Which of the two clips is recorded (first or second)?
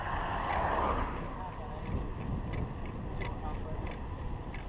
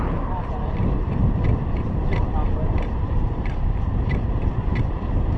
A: first